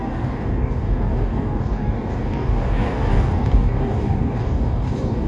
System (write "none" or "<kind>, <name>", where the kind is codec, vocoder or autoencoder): codec, DAC